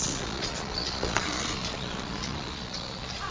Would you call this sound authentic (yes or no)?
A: no